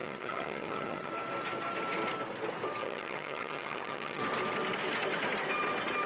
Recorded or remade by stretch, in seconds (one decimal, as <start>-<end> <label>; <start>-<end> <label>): 0.0-1.1 remade; 1.1-2.8 recorded; 2.8-4.2 remade; 4.2-6.1 recorded